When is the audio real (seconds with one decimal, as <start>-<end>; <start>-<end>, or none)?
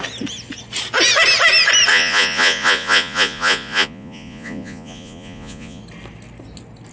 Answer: 0.0-1.9; 5.8-6.9